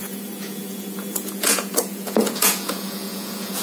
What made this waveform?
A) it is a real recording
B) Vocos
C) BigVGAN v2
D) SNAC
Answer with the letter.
B